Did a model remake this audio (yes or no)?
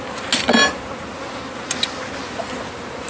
no